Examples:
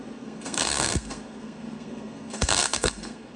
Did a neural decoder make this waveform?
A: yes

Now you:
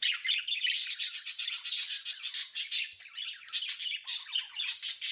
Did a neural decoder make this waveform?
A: no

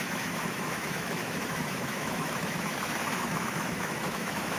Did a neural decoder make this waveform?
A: yes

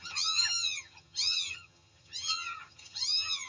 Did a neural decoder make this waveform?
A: yes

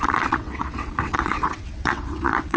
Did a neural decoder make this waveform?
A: yes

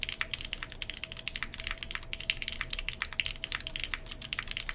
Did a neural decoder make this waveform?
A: no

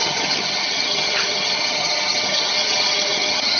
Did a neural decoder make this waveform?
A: yes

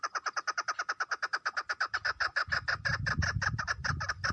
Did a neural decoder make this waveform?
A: no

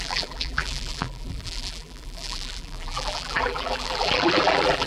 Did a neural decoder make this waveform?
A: yes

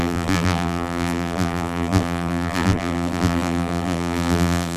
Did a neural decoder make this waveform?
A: yes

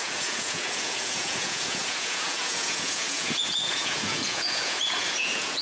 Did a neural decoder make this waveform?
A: yes